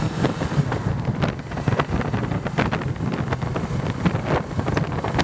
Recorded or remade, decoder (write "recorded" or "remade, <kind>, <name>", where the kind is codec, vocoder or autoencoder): recorded